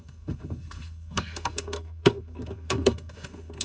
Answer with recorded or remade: remade